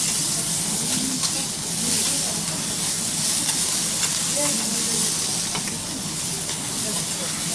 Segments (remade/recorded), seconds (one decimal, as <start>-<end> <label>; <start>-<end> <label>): 0.0-0.7 recorded; 0.7-1.3 remade; 1.3-6.0 recorded; 6.0-6.7 remade; 6.7-7.5 recorded